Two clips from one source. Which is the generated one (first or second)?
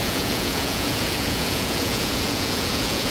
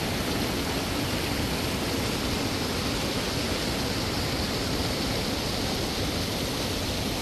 first